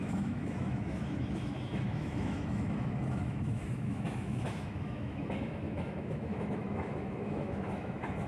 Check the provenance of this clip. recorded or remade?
remade